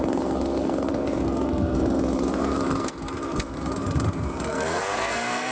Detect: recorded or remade remade